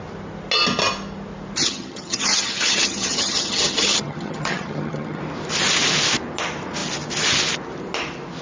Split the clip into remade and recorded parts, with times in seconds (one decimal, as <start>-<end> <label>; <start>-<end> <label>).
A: 0.0-1.6 recorded; 1.6-5.2 remade; 5.2-8.4 recorded